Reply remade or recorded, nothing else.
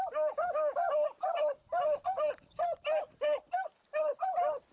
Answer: recorded